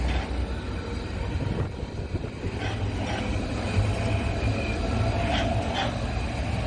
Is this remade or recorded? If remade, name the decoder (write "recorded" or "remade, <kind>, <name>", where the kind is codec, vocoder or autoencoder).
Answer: recorded